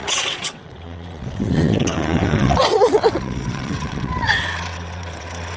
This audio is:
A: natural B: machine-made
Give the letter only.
B